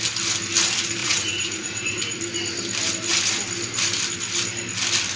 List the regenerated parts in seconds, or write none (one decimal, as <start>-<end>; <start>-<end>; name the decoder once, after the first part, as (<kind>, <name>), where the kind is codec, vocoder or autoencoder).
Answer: 1.0-2.2 (vocoder, Vocos)